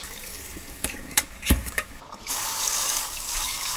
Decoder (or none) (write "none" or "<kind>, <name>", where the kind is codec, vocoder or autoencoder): codec, DAC